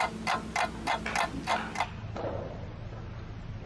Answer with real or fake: real